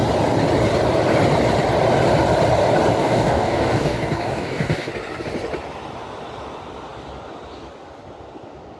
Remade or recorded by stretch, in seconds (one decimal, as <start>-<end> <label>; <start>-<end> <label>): 0.0-3.0 recorded; 3.0-4.9 remade; 4.9-8.8 recorded